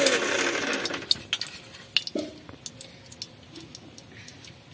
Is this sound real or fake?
real